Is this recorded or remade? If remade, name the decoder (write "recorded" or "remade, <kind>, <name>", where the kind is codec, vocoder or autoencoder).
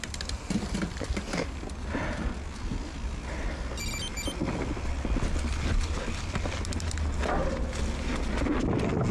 recorded